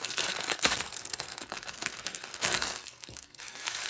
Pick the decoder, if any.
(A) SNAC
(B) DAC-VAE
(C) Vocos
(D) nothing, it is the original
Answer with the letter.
A